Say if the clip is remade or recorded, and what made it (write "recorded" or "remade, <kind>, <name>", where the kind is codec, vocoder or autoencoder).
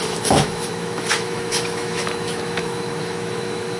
remade, autoencoder, DAC-VAE